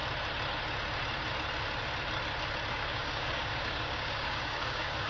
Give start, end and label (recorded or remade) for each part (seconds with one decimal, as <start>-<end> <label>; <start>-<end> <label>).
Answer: 0.0-2.7 recorded; 2.7-5.1 remade